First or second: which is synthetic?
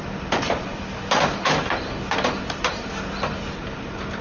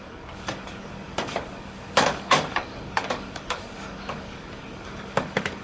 second